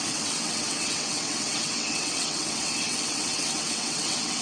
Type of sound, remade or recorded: remade